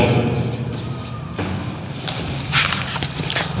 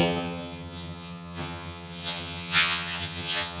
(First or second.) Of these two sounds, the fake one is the second